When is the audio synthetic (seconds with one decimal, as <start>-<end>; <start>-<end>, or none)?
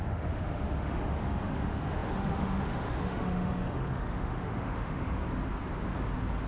0.0-5.2